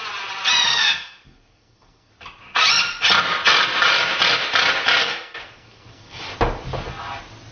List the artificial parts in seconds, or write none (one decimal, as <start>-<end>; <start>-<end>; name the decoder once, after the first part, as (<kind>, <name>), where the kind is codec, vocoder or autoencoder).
0.7-2.1 (codec, SNAC); 5.0-6.2